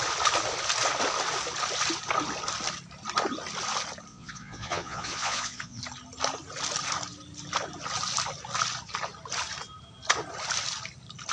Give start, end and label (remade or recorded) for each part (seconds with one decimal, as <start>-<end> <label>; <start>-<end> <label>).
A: 0.0-4.1 recorded; 4.1-5.8 remade; 5.8-11.3 recorded